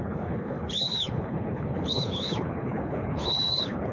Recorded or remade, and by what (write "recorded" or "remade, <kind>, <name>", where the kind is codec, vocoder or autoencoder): remade, codec, HILCodec